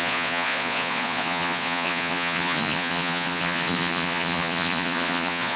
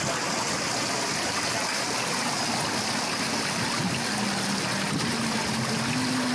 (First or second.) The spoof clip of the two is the first